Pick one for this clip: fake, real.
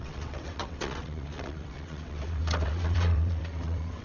fake